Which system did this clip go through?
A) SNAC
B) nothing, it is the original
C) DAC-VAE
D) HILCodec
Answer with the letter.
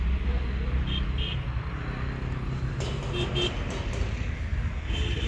B